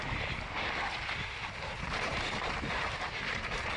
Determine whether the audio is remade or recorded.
recorded